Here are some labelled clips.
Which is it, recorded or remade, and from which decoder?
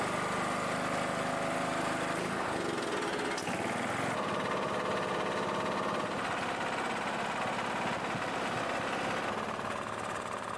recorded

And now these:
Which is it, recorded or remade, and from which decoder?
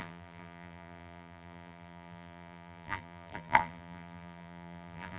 remade, vocoder, BigVGAN v2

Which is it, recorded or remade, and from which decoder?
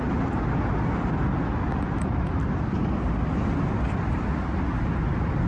recorded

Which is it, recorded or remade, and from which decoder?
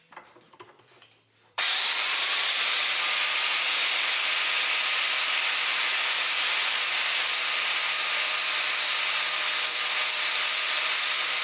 remade, vocoder, BigVGAN v2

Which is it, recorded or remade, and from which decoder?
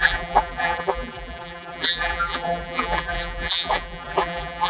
remade, vocoder, BigVGAN v2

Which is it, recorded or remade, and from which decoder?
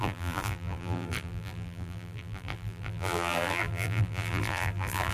remade, vocoder, BigVGAN v2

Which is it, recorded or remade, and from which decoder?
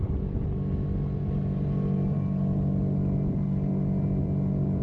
recorded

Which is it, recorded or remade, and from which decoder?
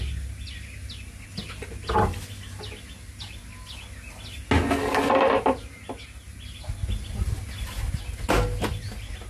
recorded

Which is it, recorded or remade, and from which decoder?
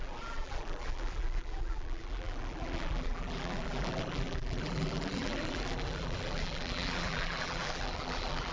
remade, vocoder, BigVGAN v2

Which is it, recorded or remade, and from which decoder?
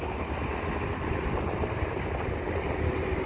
recorded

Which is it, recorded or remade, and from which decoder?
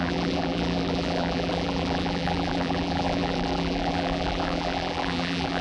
remade, vocoder, BigVGAN v2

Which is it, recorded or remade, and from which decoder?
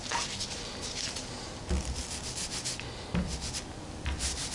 recorded